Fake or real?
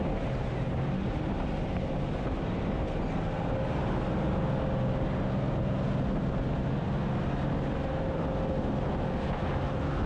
real